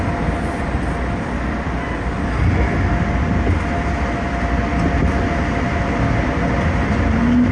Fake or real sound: real